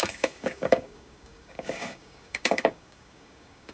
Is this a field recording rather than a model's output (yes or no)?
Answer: no